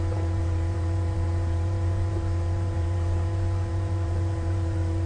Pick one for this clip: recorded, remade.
remade